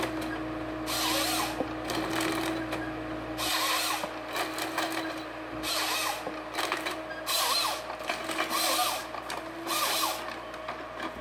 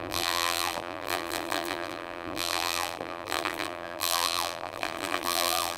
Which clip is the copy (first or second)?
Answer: second